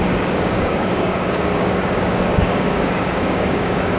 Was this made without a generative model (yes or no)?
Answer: no